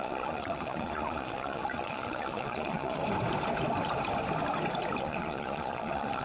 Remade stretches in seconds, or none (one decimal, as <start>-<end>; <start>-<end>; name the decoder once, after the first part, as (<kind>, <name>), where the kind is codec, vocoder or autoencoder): 0.0-3.0 (vocoder, Vocos); 5.0-6.2